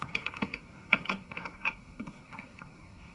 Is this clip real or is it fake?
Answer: fake